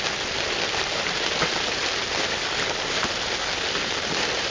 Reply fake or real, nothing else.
real